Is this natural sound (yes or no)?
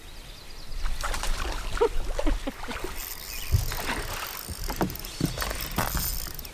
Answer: yes